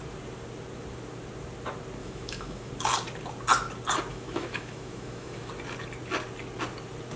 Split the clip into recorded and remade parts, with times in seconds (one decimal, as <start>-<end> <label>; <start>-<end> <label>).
0.0-2.0 recorded; 2.0-2.7 remade; 2.7-4.1 recorded; 4.1-5.5 remade; 5.5-7.2 recorded